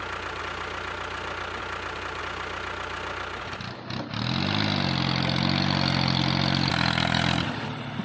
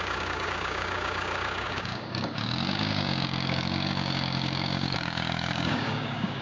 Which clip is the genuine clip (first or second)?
first